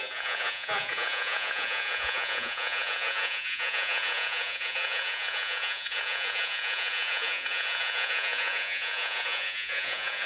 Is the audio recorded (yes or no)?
no